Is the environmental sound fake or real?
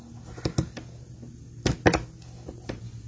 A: real